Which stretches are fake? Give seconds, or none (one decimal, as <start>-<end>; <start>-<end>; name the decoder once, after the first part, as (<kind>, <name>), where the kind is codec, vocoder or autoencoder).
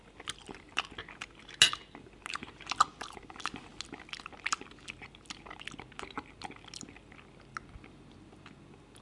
none